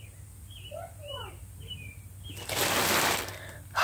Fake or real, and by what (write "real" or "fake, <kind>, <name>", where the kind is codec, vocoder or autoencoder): real